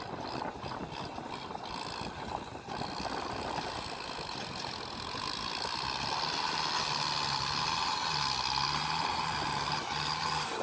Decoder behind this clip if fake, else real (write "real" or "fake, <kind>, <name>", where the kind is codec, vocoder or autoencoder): real